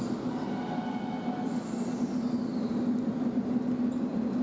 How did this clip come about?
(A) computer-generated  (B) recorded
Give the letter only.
B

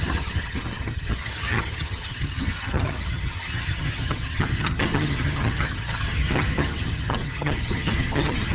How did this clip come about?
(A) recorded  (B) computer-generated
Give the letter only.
B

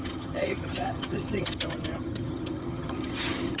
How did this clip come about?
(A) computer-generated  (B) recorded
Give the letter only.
A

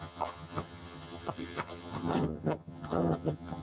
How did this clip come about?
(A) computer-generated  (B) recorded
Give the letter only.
A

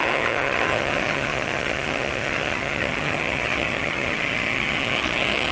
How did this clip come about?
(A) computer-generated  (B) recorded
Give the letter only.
A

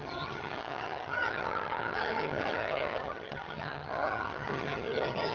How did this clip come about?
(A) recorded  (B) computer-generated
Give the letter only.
B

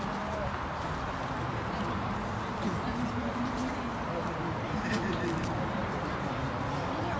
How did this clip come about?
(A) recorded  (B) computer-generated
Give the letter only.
A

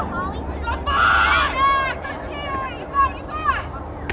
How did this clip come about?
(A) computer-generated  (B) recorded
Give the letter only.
B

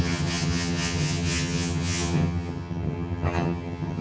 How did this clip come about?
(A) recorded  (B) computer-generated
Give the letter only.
B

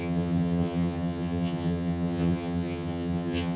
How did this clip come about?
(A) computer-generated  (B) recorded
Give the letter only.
A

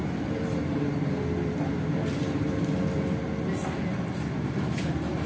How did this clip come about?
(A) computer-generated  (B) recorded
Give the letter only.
B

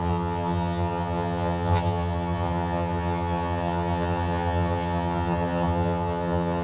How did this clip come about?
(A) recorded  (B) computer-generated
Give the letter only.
B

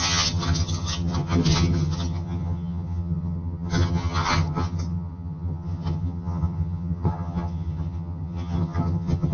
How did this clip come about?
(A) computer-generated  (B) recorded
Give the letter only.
A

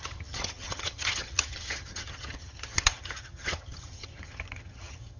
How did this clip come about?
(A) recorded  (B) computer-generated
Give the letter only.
B